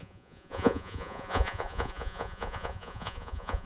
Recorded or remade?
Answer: remade